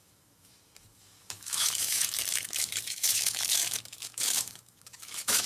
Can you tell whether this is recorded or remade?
remade